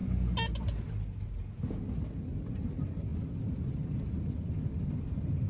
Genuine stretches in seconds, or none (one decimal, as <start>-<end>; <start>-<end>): 0.0-3.1; 4.5-5.5